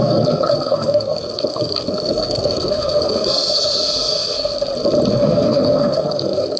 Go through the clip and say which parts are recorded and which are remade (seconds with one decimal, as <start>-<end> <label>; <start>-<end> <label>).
0.0-4.5 remade; 4.5-5.1 recorded; 5.1-6.6 remade